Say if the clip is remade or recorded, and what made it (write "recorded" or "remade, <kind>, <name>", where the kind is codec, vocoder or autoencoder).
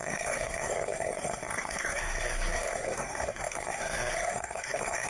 remade, codec, SNAC